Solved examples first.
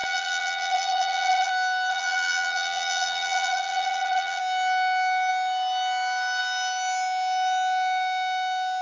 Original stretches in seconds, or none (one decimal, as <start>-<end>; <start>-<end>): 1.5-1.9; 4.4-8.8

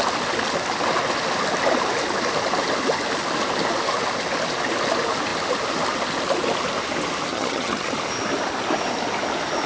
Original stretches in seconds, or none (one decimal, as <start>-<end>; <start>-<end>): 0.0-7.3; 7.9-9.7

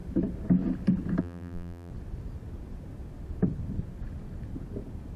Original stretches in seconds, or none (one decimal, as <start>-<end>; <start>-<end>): 0.0-1.2; 1.9-5.2